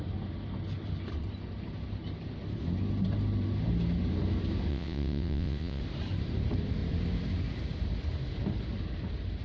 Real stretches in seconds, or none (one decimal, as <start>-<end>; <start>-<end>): 0.0-4.7; 5.8-9.4